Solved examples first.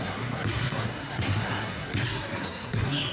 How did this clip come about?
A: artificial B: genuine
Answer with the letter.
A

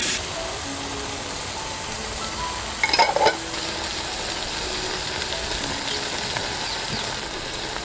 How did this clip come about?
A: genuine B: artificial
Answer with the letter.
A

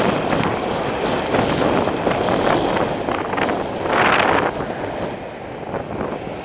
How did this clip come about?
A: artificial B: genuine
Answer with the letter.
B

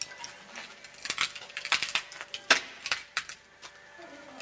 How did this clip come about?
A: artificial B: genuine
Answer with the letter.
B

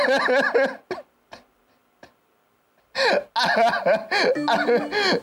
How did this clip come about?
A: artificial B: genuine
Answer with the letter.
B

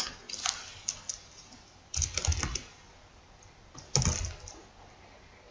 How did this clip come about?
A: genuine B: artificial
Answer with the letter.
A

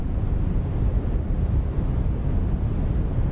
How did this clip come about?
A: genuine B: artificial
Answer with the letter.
A